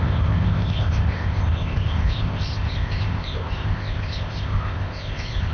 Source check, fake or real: fake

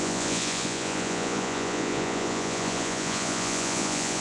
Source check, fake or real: fake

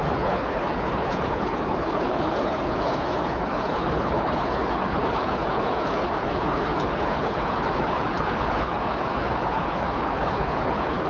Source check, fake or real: fake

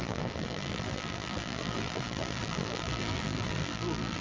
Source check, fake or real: fake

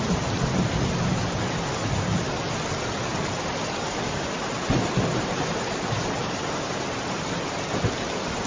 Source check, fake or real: real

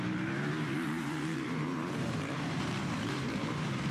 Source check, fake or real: fake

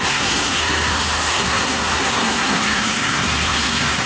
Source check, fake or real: fake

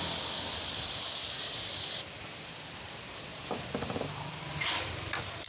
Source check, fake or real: fake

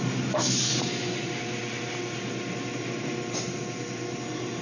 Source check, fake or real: real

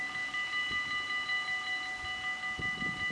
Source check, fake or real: real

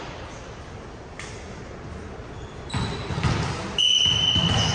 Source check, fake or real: real